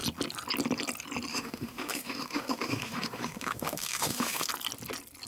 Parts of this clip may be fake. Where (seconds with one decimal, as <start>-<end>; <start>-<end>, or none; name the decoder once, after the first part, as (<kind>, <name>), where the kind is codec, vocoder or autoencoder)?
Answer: 1.3-4.5 (autoencoder, DAC-VAE)